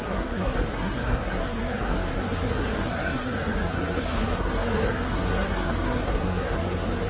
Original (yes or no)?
no